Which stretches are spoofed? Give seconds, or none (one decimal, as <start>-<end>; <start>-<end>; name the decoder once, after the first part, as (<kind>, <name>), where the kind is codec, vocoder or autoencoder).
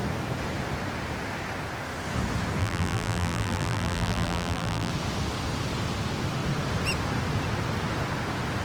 2.6-4.9 (vocoder, BigVGAN v2)